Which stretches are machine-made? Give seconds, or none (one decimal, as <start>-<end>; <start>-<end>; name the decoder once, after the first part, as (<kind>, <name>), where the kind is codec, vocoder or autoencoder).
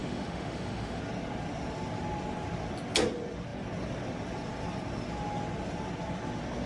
0.0-1.0 (autoencoder, DAC-VAE)